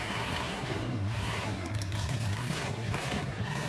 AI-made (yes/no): yes